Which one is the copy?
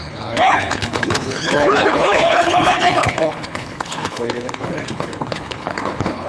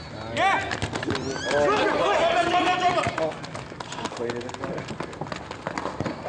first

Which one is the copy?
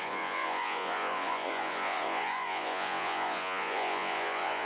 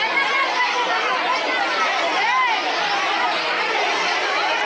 first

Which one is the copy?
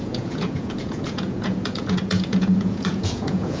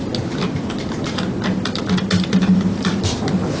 first